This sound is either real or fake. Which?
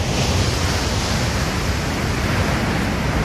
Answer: real